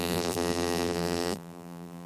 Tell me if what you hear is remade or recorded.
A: remade